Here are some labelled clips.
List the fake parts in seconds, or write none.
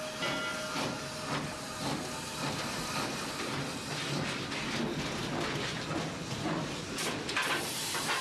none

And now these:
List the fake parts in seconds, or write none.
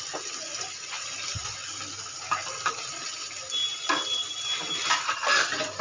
none